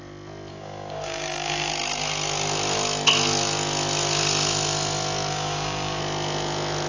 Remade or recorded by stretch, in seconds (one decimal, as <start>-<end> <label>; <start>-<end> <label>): 0.0-0.5 recorded; 0.5-1.7 remade; 1.7-5.3 recorded; 5.3-6.0 remade; 6.0-6.9 recorded